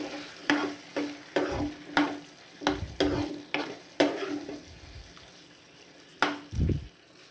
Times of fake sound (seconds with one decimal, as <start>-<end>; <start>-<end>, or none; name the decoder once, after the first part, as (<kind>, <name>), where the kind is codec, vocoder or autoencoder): none

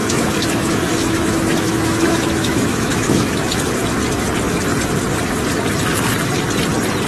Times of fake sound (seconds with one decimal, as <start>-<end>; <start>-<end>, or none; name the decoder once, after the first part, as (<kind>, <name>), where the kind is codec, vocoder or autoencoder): 0.0-3.7 (autoencoder, DAC-VAE)

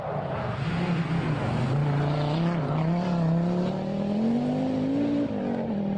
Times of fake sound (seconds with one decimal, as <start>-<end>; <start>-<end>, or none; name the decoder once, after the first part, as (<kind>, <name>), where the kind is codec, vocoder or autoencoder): none

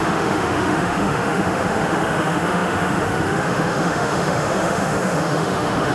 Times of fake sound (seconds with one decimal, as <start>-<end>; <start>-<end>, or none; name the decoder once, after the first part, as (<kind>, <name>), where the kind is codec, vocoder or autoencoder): 0.0-5.9 (autoencoder, DAC-VAE)

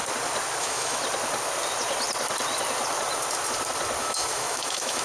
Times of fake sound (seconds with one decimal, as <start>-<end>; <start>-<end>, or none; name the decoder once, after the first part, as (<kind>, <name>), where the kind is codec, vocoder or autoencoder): 0.6-1.0 (autoencoder, DAC-VAE); 4.0-5.0

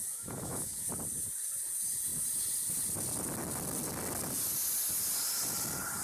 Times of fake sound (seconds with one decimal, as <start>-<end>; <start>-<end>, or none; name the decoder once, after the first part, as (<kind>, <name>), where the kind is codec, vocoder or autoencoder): 0.0-0.9 (autoencoder, DAC-VAE)

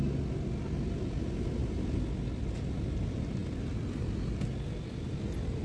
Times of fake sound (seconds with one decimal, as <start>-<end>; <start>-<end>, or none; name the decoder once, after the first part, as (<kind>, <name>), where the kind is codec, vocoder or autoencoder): none

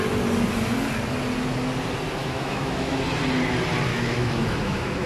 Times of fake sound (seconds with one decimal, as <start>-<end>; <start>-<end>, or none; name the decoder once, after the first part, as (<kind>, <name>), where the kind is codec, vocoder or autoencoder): 2.2-3.0 (autoencoder, DAC-VAE); 3.9-5.1